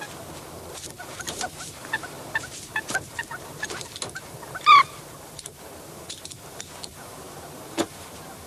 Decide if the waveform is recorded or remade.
remade